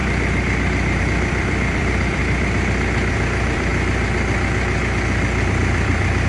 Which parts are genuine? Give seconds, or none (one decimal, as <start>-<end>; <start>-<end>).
0.0-1.0; 2.2-3.1; 3.7-5.4